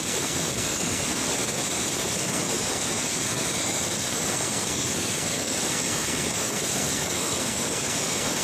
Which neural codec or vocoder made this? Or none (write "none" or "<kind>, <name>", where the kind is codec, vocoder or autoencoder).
codec, SNAC